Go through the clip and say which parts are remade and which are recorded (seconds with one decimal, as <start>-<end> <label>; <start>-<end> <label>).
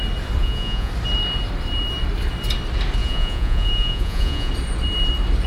0.0-0.4 recorded; 0.4-0.9 remade; 0.9-3.0 recorded; 3.0-4.5 remade; 4.5-5.5 recorded